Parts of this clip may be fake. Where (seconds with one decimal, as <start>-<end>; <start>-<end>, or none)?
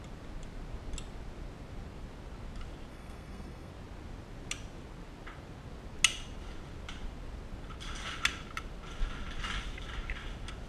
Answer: 2.9-3.7